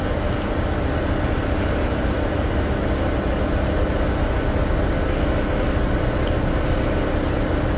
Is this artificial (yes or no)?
no